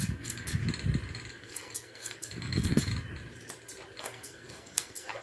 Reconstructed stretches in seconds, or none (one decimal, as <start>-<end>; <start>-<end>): 0.0-0.6; 1.3-2.9; 4.0-5.2